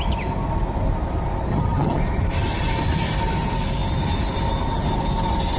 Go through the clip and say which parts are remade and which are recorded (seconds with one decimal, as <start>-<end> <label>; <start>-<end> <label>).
0.0-1.5 recorded; 1.5-2.0 remade; 2.0-5.6 recorded